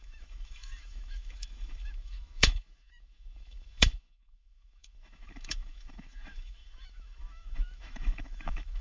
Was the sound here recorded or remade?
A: remade